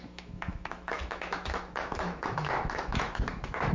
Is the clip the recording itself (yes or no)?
no